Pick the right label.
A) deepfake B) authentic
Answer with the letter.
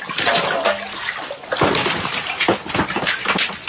B